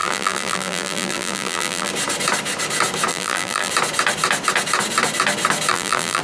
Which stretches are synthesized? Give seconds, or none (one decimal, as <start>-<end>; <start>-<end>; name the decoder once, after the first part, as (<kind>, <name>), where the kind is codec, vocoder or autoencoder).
0.0-1.9 (vocoder, BigVGAN v2); 3.1-3.7; 5.7-6.2